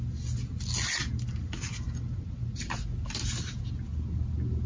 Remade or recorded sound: recorded